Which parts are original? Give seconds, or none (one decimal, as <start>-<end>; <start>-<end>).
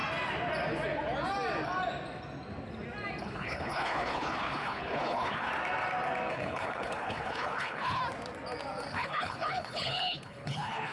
0.0-3.2; 5.5-6.3; 8.0-8.9